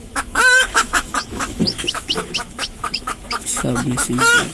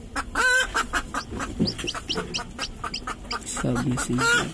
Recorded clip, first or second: second